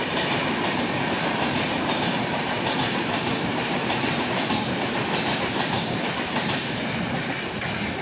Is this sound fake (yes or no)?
yes